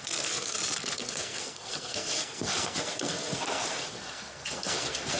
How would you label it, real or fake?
fake